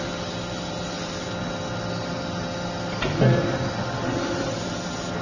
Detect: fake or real real